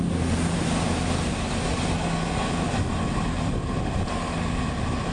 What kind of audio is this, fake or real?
real